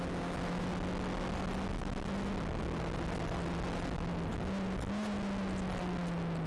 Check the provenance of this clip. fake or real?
real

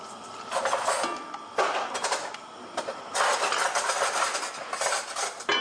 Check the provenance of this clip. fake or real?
real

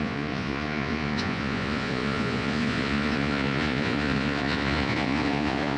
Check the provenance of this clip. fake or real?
fake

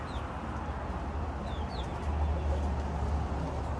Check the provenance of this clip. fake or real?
real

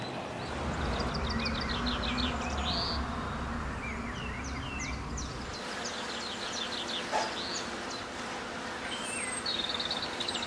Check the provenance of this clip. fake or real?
real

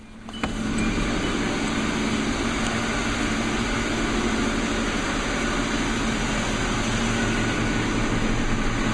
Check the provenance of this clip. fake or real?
real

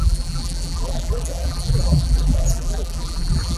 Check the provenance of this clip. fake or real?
fake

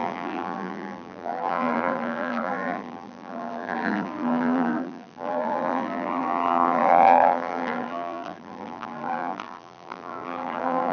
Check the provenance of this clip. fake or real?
fake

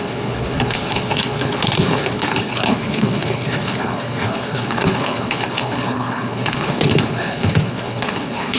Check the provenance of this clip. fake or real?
fake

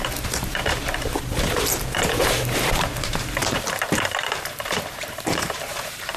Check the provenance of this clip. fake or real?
fake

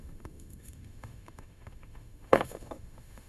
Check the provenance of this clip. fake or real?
fake